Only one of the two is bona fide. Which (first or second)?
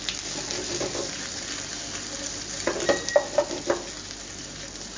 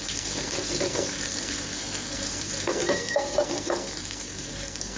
first